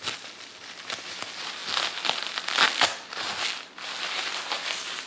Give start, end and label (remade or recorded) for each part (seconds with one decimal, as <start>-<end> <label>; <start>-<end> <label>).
0.0-5.1 recorded